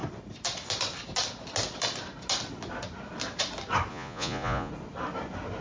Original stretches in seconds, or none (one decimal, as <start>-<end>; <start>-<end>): 0.0-3.9; 4.7-5.6

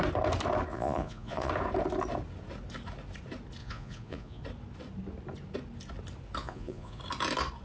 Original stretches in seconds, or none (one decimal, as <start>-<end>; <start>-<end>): 0.0-0.7; 1.5-3.6; 4.4-6.4; 7.0-7.6